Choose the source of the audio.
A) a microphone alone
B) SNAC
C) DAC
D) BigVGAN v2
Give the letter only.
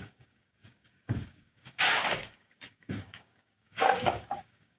C